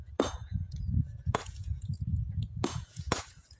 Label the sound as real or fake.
fake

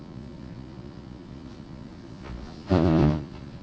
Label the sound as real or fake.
fake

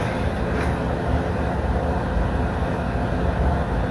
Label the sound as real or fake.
real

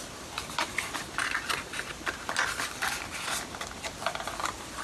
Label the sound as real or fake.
real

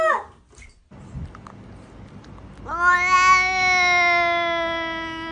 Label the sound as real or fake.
real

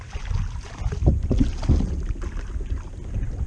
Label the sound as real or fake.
real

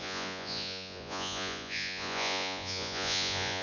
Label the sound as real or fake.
fake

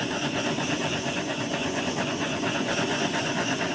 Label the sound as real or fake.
fake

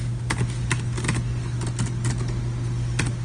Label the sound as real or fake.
real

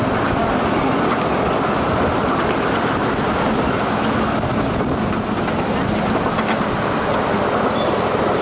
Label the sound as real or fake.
real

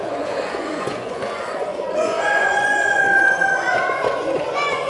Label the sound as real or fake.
fake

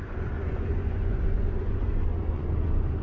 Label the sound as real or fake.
fake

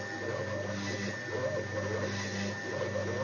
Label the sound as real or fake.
real